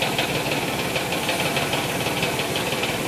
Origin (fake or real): real